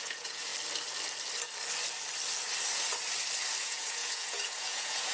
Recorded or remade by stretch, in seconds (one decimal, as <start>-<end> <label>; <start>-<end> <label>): 0.0-0.5 remade; 0.5-3.6 recorded; 3.6-5.1 remade